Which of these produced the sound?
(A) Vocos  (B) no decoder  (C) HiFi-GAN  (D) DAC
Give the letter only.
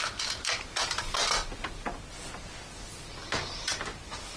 B